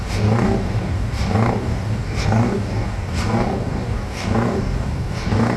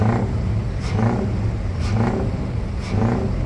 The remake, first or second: first